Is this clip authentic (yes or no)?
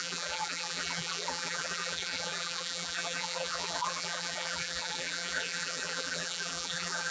no